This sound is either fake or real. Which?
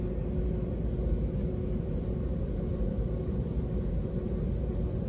real